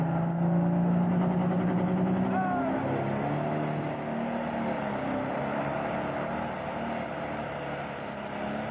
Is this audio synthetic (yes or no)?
no